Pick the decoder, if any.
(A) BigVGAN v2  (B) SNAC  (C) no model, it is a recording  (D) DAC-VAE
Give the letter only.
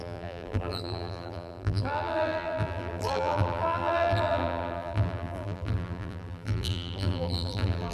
A